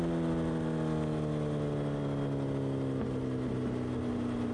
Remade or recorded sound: recorded